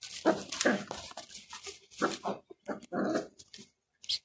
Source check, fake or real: real